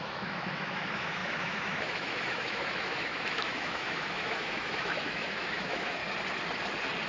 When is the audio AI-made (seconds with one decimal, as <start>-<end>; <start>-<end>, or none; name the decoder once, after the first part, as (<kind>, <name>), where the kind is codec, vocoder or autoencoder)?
0.0-6.0 (autoencoder, DAC-VAE)